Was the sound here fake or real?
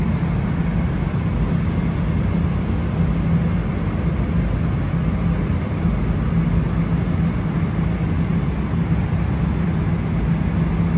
real